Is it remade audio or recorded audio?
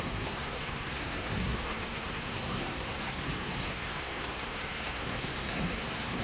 remade